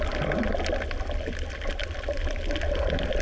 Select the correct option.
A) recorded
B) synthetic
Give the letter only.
A